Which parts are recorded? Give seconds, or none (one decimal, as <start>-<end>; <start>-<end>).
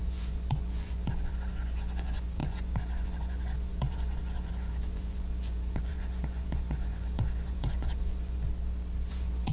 8.5-9.1